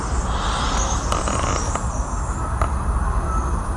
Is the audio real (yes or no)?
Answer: yes